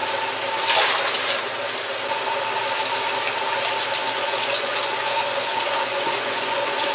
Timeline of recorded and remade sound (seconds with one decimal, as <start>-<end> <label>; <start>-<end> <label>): 0.0-4.0 recorded; 4.0-6.9 remade